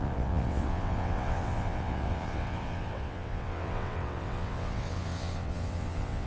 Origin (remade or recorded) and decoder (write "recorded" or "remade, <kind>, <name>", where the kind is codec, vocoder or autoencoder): remade, vocoder, WaveNeXt